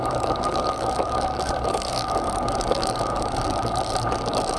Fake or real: fake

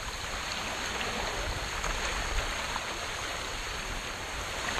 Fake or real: real